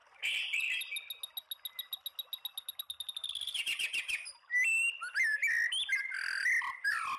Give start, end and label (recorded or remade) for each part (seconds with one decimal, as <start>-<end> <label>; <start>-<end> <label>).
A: 0.0-0.9 remade; 0.9-3.5 recorded; 3.5-5.4 remade; 5.4-6.4 recorded; 6.4-7.2 remade